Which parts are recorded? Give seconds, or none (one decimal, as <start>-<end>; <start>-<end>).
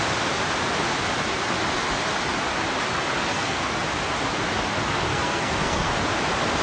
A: 0.0-3.3; 3.8-5.1; 5.9-6.6